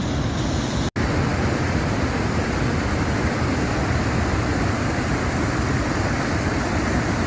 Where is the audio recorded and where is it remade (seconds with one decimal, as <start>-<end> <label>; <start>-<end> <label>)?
0.0-7.3 recorded

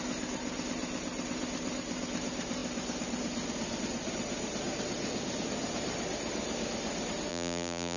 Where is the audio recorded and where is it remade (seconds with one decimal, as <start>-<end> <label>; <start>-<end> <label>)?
0.0-7.3 recorded; 7.3-8.0 remade